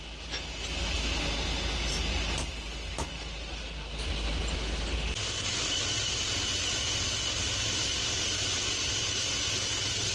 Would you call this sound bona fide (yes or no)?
yes